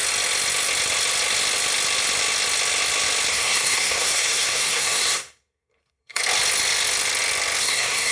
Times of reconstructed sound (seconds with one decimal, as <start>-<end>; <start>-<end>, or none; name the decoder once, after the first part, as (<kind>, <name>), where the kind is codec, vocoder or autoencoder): 3.3-6.2 (codec, SNAC); 7.6-8.1

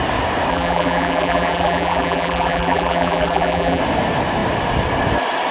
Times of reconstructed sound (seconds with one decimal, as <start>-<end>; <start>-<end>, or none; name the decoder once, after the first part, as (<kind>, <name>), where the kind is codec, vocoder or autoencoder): 0.5-3.8 (vocoder, BigVGAN v2)

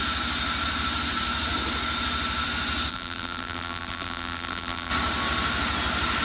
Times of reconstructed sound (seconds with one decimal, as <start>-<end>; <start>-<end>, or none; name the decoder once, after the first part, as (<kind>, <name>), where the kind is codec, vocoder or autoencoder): 2.9-4.9 (vocoder, BigVGAN v2)

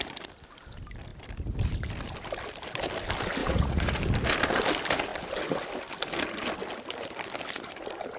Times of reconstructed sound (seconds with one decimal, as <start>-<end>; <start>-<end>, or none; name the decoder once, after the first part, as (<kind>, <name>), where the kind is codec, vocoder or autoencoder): 3.4-4.0 (vocoder, Vocos)